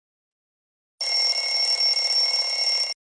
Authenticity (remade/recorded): recorded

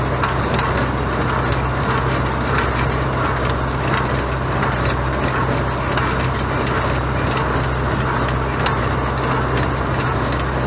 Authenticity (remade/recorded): recorded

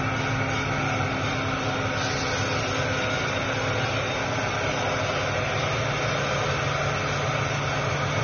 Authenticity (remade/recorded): recorded